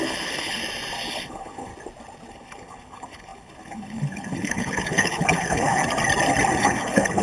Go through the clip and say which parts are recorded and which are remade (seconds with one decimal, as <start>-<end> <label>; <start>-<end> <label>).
0.0-0.6 remade; 0.6-1.1 recorded; 1.1-1.7 remade; 1.7-2.3 recorded; 2.3-5.8 remade; 5.8-6.6 recorded; 6.6-7.2 remade